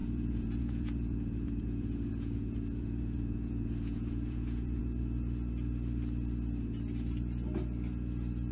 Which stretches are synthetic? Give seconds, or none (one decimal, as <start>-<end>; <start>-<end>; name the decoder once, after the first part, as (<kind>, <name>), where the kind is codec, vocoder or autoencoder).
0.0-4.8 (vocoder, Vocos)